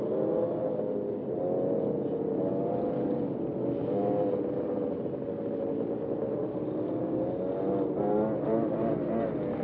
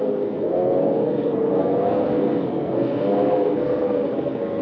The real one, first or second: first